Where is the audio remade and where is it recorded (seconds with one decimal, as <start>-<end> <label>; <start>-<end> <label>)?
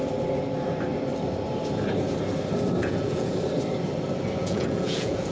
0.0-2.8 recorded; 2.8-3.4 remade; 3.4-4.4 recorded; 4.4-5.3 remade